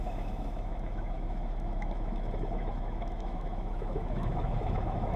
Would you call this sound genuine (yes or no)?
no